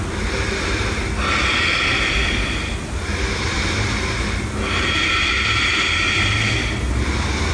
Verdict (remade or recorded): recorded